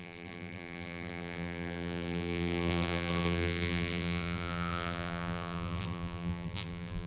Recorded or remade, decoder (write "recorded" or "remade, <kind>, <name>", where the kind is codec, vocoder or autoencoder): remade, vocoder, BigVGAN v2